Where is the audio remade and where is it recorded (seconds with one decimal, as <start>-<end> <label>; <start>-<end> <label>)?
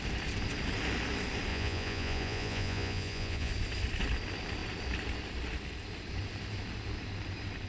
0.0-1.5 recorded; 1.5-3.5 remade; 3.5-7.7 recorded